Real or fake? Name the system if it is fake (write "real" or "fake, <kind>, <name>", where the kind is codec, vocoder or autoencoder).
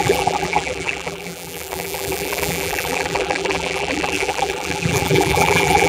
fake, vocoder, BigVGAN v2